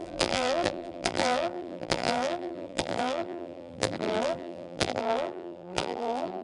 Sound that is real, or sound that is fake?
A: fake